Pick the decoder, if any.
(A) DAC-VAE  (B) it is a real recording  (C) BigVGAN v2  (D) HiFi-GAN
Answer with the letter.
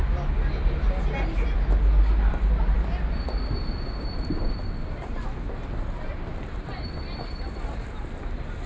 B